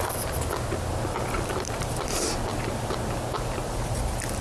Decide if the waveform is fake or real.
real